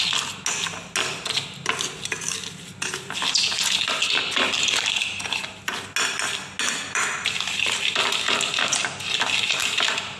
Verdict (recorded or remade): recorded